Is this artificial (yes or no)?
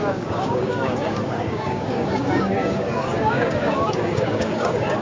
yes